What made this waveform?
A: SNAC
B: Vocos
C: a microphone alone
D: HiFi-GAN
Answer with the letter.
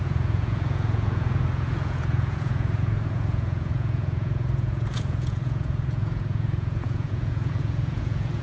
B